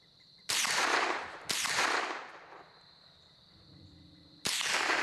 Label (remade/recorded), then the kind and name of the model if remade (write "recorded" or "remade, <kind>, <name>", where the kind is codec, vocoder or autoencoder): remade, vocoder, BigVGAN v2